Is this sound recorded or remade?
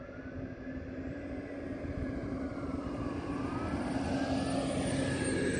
recorded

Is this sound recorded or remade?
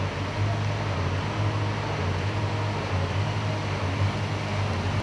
recorded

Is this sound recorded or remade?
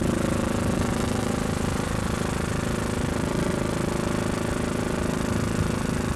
recorded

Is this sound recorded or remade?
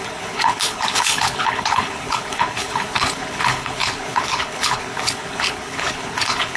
remade